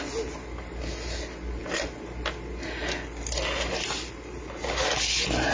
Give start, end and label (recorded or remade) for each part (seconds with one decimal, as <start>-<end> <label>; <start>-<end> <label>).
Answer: 0.0-5.5 recorded